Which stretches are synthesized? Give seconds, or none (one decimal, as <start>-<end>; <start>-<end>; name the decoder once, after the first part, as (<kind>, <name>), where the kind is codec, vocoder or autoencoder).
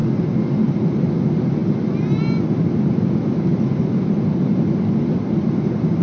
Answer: none